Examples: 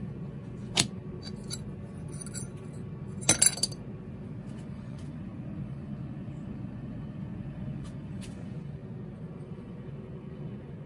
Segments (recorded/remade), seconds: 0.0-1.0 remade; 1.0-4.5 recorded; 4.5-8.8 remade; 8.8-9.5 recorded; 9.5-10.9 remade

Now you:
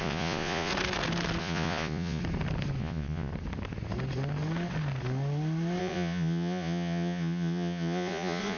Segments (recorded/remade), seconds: 0.0-0.7 remade; 0.7-1.4 recorded; 1.4-2.2 remade; 2.2-2.8 recorded; 2.8-3.3 remade; 3.3-5.8 recorded; 5.8-8.6 remade

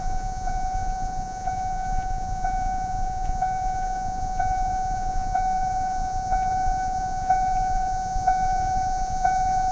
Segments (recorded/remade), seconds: 0.0-9.7 remade